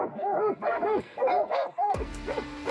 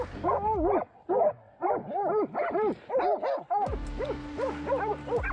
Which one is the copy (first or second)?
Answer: first